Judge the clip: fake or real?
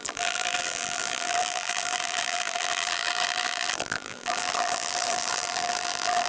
fake